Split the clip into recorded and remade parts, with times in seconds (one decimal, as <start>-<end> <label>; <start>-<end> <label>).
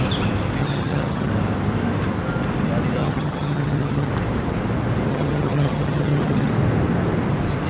0.0-0.6 recorded; 0.6-1.3 remade; 1.3-3.0 recorded; 3.0-4.1 remade; 4.1-5.1 recorded; 5.1-6.5 remade; 6.5-7.7 recorded